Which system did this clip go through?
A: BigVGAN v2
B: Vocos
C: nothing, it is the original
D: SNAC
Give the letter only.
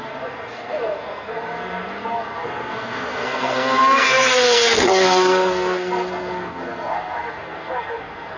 D